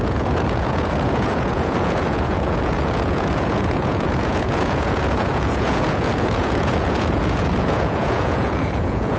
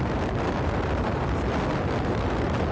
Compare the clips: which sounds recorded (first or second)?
second